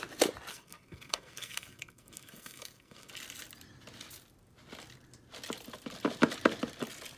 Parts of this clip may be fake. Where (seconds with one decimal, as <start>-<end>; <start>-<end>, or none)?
0.5-3.1